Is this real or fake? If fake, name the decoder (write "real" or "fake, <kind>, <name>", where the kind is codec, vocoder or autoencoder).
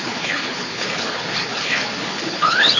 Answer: fake, codec, HILCodec